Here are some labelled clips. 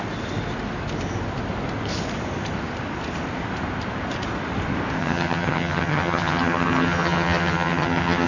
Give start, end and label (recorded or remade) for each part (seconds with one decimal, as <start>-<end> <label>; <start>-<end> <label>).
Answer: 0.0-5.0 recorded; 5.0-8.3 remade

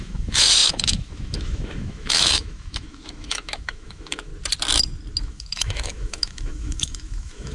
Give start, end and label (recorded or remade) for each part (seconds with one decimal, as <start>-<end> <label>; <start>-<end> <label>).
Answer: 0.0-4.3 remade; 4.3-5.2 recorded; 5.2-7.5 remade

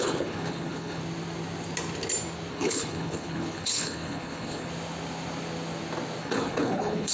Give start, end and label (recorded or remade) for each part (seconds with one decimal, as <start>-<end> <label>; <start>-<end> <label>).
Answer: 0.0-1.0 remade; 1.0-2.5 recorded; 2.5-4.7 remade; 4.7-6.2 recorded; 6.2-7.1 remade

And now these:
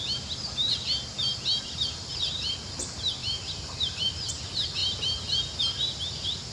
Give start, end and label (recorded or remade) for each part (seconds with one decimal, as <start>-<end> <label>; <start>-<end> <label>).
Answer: 0.0-6.5 recorded

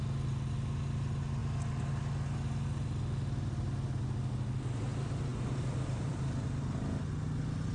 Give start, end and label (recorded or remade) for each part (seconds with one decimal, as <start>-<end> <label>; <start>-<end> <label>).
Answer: 0.0-5.3 recorded; 5.3-6.1 remade; 6.1-7.7 recorded

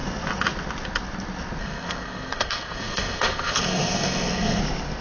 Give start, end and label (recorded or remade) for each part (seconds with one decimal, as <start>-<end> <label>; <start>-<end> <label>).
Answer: 0.0-1.6 recorded; 1.6-4.6 remade; 4.6-5.0 recorded

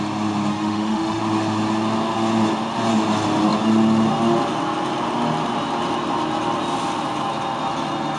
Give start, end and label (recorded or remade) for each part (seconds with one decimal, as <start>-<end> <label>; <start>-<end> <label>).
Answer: 0.0-0.5 recorded; 0.5-1.2 remade; 1.2-8.2 recorded